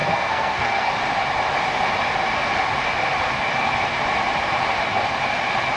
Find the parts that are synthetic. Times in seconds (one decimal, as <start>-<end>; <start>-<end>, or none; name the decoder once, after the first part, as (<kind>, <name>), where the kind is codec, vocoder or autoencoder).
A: 0.0-0.9 (codec, SNAC)